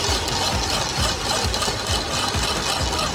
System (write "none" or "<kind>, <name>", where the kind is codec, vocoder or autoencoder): none